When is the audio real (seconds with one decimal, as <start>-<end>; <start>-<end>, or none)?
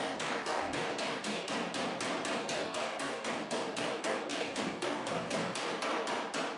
1.5-2.4; 5.7-6.6